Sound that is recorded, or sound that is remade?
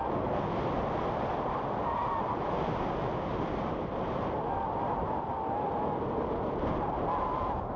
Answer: recorded